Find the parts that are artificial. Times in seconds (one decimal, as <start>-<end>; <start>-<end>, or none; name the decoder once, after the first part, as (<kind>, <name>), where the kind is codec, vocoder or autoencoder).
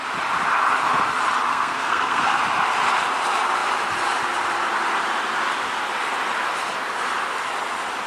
1.5-2.4 (codec, SNAC)